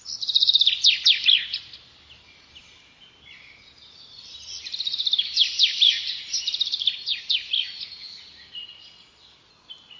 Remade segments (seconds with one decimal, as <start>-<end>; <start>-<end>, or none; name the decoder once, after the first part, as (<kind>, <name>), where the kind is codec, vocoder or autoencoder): 5.5-7.3 (vocoder, BigVGAN v2)